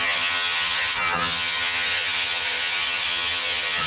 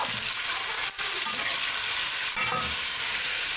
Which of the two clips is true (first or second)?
second